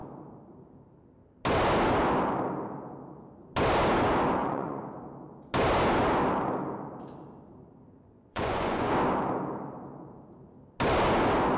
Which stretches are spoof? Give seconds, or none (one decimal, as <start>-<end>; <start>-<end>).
4.4-4.9; 7.7-8.9